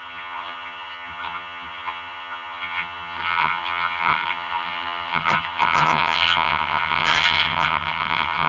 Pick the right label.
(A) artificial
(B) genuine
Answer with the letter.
A